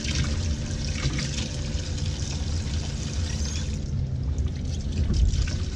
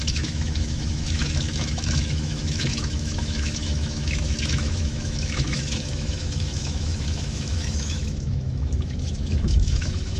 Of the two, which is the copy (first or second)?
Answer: second